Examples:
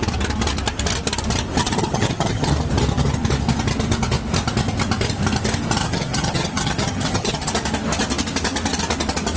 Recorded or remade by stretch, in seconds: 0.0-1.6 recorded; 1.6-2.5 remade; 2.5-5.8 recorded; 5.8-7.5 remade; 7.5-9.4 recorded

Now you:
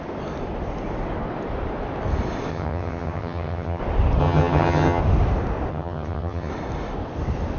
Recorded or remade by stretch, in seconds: 0.0-2.5 recorded; 2.5-3.8 remade; 3.8-4.2 recorded; 4.2-5.0 remade; 5.0-5.7 recorded; 5.7-6.5 remade; 6.5-7.6 recorded

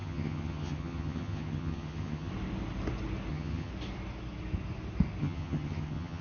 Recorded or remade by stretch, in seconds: 0.0-2.3 remade; 2.3-3.3 recorded; 3.3-3.7 remade; 3.7-5.2 recorded; 5.2-6.2 remade

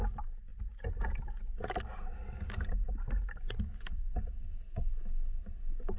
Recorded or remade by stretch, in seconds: 0.0-6.0 recorded

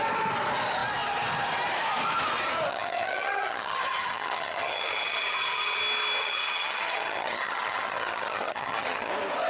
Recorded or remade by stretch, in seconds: 0.0-2.7 recorded; 2.7-5.8 remade; 5.8-6.2 recorded; 6.2-9.1 remade; 9.1-9.5 recorded

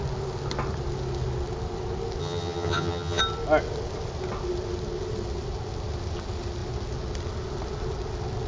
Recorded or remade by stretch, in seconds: 0.0-2.2 recorded; 2.2-3.2 remade; 3.2-8.5 recorded